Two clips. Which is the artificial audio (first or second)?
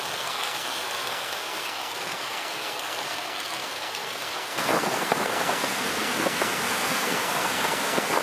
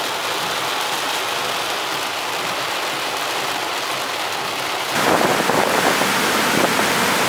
first